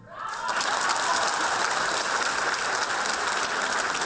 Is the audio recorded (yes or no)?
yes